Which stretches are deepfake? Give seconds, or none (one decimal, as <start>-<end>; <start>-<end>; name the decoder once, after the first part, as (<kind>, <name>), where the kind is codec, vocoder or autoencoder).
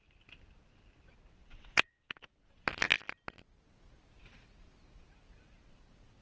1.4-2.5 (vocoder, WaveNeXt)